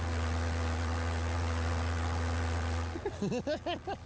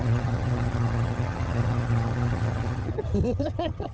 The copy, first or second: second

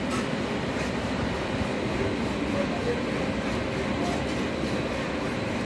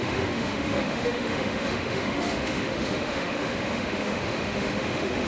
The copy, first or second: second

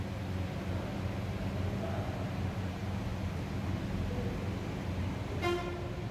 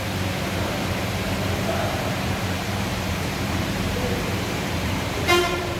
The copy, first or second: second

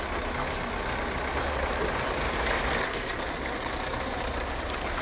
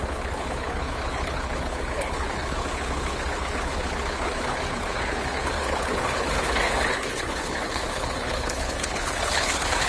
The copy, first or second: second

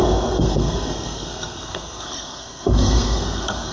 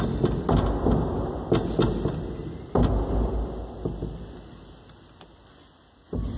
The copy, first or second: first